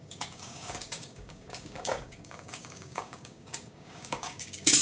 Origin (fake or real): fake